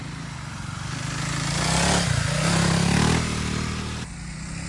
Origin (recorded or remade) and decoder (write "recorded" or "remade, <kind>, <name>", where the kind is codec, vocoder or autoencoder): recorded